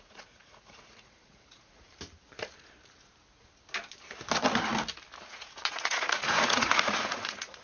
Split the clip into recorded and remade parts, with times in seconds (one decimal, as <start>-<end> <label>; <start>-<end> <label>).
0.0-1.9 remade; 1.9-5.3 recorded; 5.3-7.6 remade